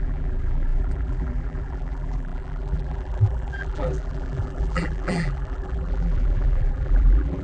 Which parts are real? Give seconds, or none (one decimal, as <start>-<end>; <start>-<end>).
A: none

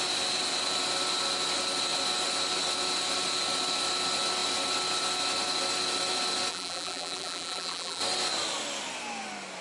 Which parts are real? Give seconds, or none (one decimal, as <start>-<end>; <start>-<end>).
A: 0.0-6.5; 8.0-9.6

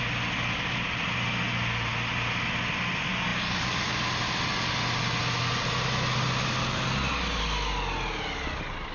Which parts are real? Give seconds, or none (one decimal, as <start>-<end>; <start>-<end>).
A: 0.0-8.9